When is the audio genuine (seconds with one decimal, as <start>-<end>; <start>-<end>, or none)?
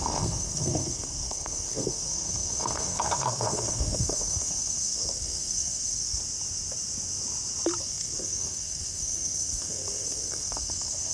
6.2-7.8